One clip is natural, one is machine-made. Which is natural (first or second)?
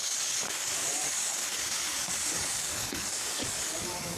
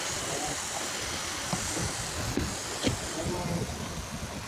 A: second